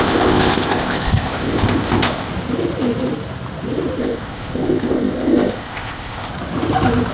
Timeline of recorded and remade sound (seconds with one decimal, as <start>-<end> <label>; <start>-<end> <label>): 0.0-2.3 remade; 2.3-4.0 recorded; 4.0-6.3 remade; 6.3-7.1 recorded